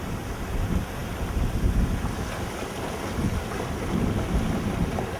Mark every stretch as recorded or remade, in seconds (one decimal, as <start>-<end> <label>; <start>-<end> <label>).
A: 0.0-5.2 recorded